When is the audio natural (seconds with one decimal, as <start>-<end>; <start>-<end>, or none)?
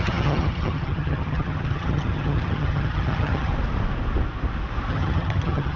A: 3.5-4.9